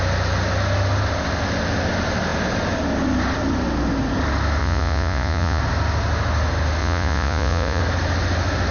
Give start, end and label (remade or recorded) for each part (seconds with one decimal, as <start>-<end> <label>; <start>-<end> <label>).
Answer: 0.0-4.6 recorded; 4.6-5.6 remade; 5.6-6.8 recorded; 6.8-7.8 remade; 7.8-8.7 recorded